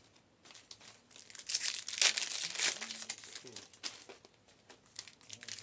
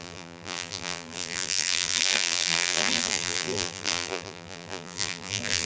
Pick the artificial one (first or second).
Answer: second